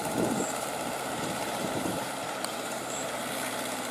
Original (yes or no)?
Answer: no